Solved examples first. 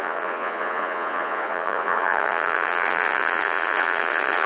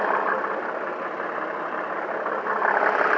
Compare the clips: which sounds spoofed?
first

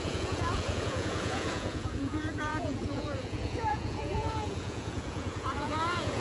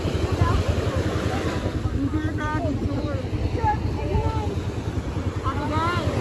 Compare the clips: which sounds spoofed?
first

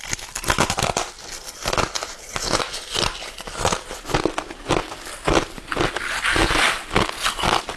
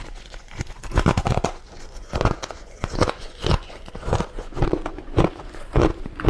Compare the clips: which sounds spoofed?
second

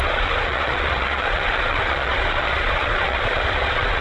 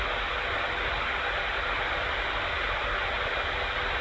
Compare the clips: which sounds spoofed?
first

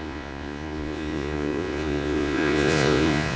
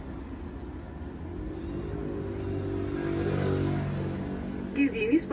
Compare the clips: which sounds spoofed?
first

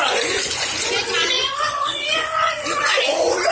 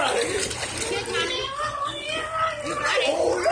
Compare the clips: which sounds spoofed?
first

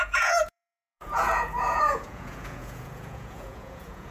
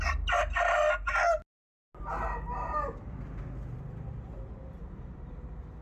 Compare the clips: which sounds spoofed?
first